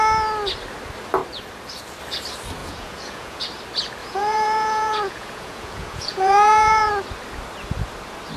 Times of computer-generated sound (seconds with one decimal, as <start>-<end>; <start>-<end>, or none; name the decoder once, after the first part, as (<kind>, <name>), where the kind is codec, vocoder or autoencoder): 2.6-3.4 (vocoder, Vocos); 4.0-6.9